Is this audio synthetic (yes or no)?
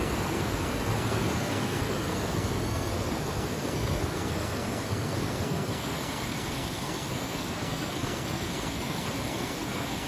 yes